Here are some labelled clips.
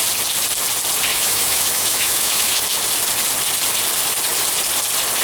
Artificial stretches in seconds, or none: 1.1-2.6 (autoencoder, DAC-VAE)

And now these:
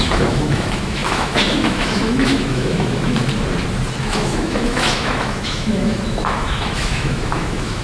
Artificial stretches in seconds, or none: 0.0-3.2 (autoencoder, DAC-VAE); 4.0-7.8

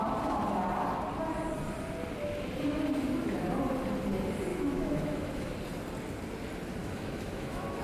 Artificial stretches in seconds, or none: 4.5-5.5 (autoencoder, DAC-VAE); 6.8-7.8

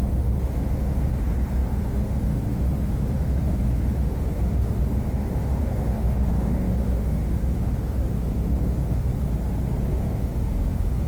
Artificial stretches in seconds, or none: 0.0-9.1 (autoencoder, DAC-VAE); 9.9-11.1

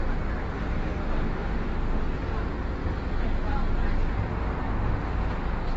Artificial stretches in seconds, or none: 1.3-2.0 (autoencoder, DAC-VAE); 4.7-5.3